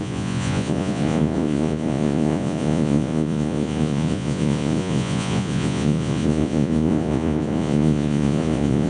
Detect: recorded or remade remade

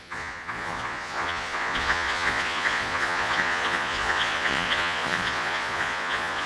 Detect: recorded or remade remade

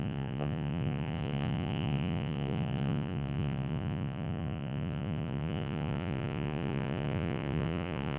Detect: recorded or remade remade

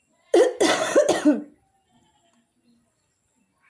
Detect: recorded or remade recorded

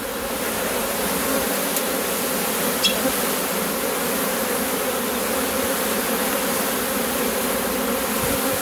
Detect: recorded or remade recorded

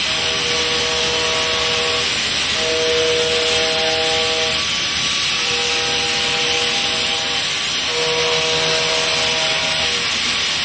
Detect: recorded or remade recorded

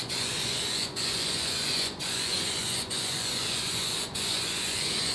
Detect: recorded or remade remade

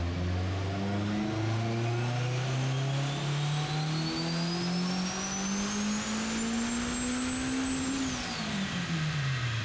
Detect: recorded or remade recorded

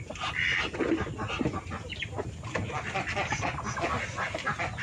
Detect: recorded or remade recorded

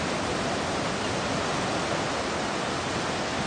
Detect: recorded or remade recorded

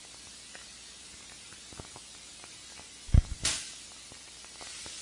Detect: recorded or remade recorded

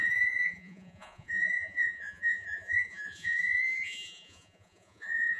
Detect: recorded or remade remade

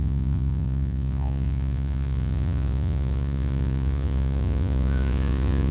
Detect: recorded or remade remade